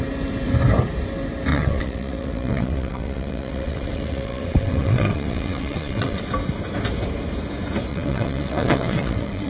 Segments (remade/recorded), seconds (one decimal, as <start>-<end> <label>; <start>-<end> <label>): 0.0-1.5 recorded; 1.5-6.2 remade; 6.2-7.9 recorded; 7.9-9.5 remade